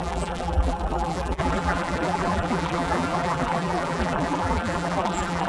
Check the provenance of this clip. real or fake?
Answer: fake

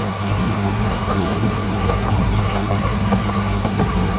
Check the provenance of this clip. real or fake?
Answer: fake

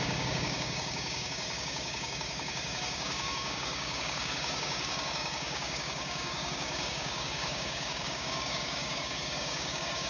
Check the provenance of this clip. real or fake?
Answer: fake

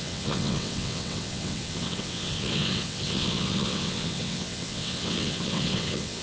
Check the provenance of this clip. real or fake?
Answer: fake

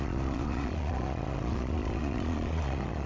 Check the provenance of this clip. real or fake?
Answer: fake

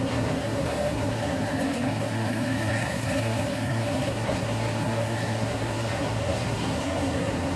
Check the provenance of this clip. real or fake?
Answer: fake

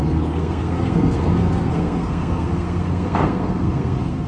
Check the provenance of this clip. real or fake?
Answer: fake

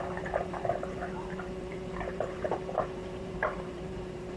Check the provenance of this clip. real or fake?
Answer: fake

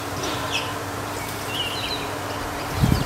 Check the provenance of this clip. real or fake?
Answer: fake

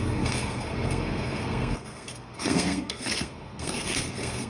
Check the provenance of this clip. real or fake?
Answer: fake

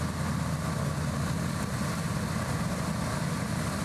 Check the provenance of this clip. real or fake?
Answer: real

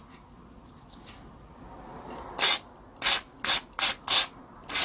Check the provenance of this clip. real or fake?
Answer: real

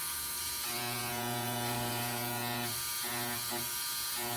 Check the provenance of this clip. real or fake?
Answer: fake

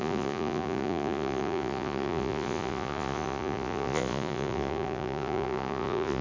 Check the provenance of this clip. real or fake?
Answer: fake